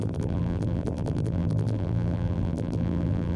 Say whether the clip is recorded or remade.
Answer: remade